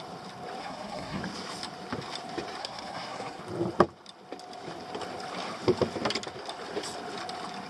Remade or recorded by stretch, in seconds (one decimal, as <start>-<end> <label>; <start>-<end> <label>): 0.0-0.6 recorded; 0.6-1.2 remade; 1.2-2.6 recorded; 2.6-3.4 remade; 3.4-7.7 recorded